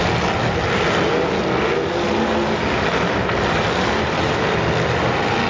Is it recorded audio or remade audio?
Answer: recorded